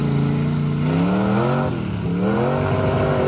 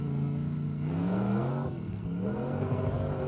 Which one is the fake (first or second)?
second